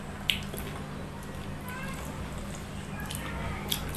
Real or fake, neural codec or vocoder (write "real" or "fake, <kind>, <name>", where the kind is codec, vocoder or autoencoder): real